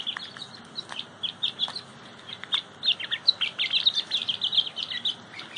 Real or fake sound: real